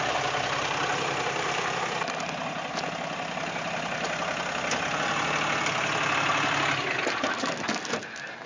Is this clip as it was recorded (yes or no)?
yes